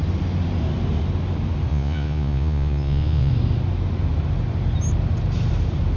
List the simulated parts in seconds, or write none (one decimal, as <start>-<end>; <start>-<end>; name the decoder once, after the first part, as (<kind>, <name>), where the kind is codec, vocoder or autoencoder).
1.7-3.3 (vocoder, Vocos)